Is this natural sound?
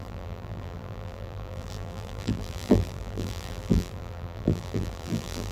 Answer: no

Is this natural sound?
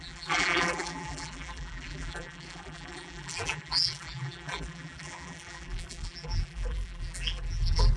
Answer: no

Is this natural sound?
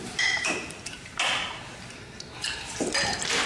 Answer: no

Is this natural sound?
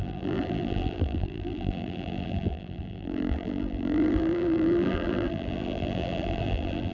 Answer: no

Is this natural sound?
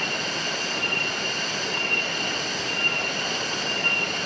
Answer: yes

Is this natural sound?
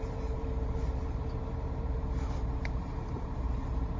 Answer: no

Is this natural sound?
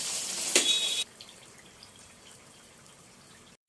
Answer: no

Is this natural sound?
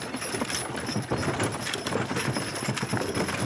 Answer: yes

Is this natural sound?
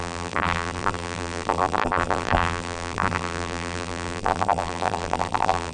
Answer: no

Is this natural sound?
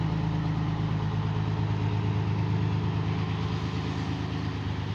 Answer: yes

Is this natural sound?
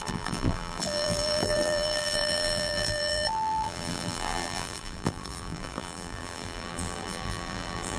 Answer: no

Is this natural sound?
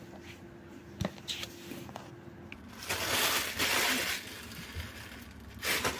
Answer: yes